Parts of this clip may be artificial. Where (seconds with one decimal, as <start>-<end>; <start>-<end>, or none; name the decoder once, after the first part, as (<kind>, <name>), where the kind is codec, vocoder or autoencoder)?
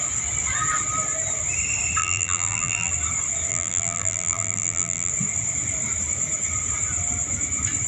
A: 2.0-2.9 (vocoder, BigVGAN v2); 3.5-5.1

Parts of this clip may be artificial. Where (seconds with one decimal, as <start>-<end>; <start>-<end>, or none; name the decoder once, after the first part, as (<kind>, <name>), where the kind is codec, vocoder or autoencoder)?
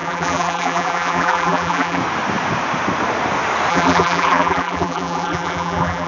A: 0.0-2.0 (vocoder, BigVGAN v2); 3.7-6.1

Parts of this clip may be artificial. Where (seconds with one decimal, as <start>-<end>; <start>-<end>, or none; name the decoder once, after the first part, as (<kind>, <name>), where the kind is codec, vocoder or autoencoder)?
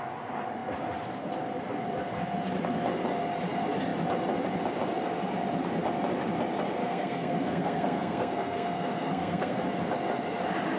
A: 6.8-9.6 (codec, SNAC)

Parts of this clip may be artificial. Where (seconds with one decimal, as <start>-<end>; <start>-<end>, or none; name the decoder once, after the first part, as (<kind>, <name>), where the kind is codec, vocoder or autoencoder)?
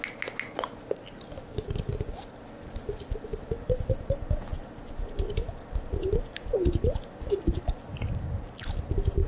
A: none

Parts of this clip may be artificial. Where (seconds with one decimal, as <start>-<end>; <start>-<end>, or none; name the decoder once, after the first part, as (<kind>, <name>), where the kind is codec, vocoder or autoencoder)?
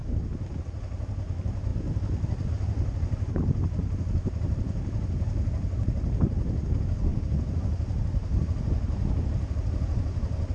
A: none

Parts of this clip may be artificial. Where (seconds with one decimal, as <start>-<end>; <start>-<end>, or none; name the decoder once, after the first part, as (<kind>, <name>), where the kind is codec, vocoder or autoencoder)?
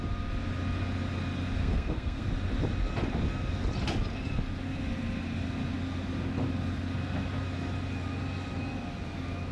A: 1.6-2.3 (codec, SNAC)